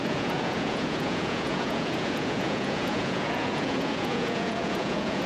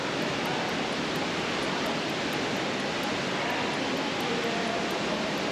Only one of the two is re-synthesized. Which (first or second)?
first